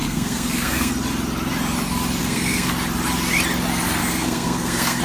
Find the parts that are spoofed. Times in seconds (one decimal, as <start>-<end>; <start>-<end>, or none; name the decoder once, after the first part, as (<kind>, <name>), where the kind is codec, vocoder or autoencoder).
0.0-0.9 (codec, SNAC); 2.2-2.7; 4.0-5.0